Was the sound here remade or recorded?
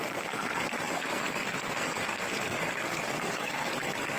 remade